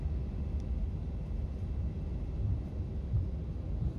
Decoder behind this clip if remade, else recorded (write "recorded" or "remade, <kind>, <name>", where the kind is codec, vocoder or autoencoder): recorded